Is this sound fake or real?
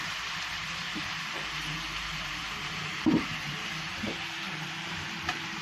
fake